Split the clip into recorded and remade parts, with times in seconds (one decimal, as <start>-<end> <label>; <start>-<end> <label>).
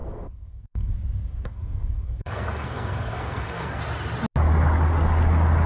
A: 0.0-0.9 remade; 0.9-1.3 recorded; 1.3-3.8 remade; 3.8-5.7 recorded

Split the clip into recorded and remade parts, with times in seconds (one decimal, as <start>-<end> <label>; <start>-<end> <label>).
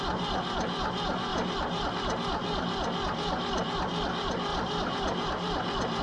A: 0.0-1.3 recorded; 1.3-1.9 remade; 1.9-4.5 recorded; 4.5-6.0 remade